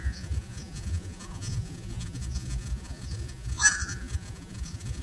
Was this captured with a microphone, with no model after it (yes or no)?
no